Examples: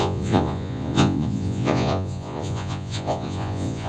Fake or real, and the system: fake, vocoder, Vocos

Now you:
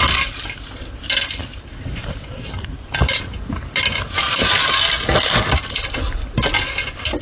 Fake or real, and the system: real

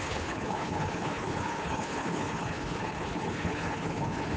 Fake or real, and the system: fake, codec, HILCodec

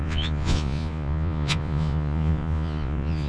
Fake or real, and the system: fake, vocoder, Vocos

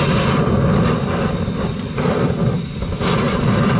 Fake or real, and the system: fake, vocoder, BigVGAN v2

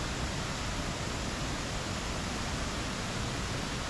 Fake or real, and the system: real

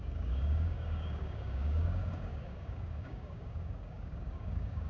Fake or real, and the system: fake, codec, DAC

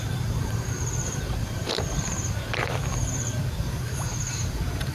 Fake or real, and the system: fake, vocoder, BigVGAN v2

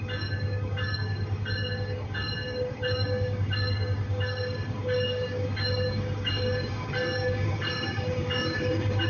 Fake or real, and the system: fake, codec, DAC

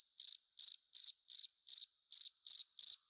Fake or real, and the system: real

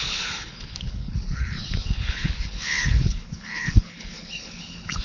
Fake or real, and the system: fake, codec, HILCodec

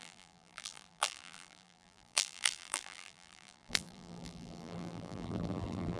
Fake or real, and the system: fake, vocoder, BigVGAN v2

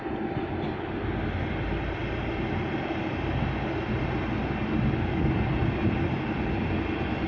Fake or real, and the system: real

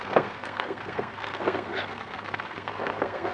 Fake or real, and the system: fake, codec, SNAC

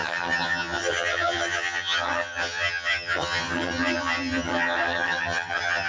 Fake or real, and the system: fake, vocoder, HiFi-GAN